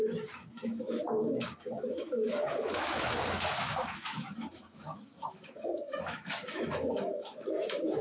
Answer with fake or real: fake